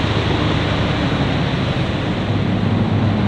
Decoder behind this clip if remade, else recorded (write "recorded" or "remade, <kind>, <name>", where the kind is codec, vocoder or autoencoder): remade, vocoder, BigVGAN v2